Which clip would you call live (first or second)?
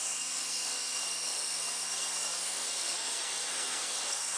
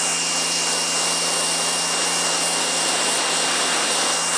second